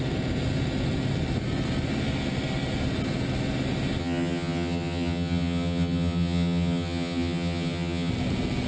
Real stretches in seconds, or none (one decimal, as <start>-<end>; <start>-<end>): 0.0-4.0; 8.1-8.7